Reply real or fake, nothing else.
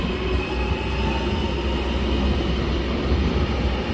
real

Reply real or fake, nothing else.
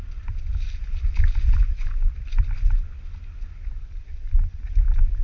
real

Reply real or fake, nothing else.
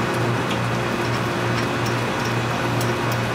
real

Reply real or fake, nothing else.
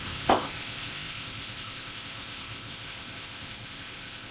fake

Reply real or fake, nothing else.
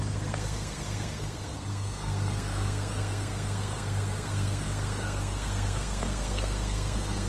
fake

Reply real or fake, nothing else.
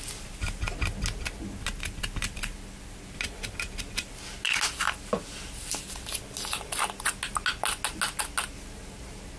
real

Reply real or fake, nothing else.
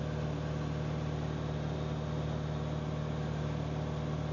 real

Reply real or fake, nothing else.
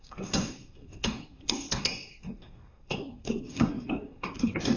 fake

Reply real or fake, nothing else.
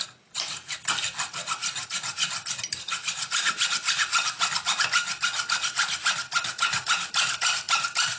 real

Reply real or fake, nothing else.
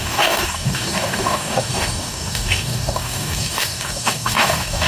fake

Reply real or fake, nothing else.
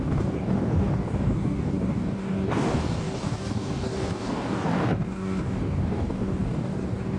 fake